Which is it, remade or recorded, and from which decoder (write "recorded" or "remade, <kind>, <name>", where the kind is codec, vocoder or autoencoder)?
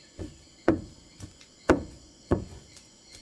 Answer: remade, vocoder, Vocos